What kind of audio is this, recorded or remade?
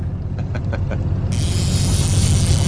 recorded